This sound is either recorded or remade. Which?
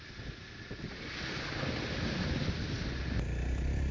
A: recorded